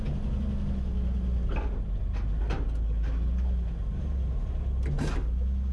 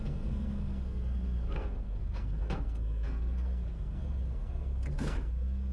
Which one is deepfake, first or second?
second